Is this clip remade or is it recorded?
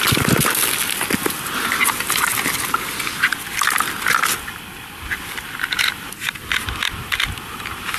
recorded